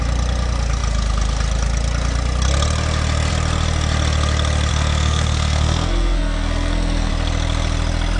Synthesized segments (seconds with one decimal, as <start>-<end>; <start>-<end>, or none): 4.7-7.1